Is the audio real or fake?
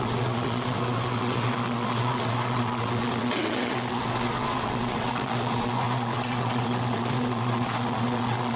fake